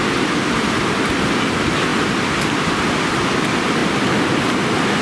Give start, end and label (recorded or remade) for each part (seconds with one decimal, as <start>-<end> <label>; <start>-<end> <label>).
0.0-1.9 recorded; 1.9-3.1 remade; 3.1-3.8 recorded; 3.8-5.0 remade